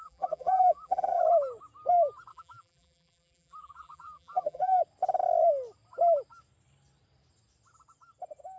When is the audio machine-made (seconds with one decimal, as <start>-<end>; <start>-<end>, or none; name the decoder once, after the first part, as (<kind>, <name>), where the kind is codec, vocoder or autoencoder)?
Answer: 0.0-1.2 (vocoder, BigVGAN v2); 2.3-4.8